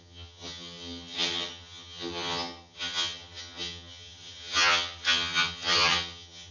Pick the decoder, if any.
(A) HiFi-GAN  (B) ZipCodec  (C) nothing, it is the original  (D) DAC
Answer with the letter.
A